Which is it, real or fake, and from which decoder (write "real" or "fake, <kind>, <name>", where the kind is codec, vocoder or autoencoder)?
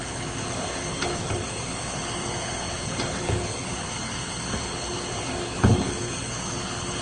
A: fake, codec, HILCodec